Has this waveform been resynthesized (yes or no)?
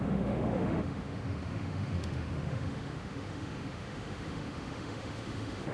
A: yes